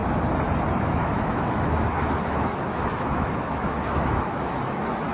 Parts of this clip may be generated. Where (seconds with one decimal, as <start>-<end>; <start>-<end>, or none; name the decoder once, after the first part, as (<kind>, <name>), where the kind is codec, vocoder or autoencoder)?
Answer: 0.9-5.1 (autoencoder, DAC-VAE)